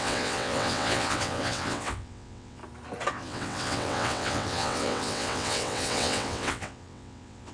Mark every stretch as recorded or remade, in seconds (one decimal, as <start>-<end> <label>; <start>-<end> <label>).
0.0-2.6 remade; 2.6-3.1 recorded; 3.1-7.5 remade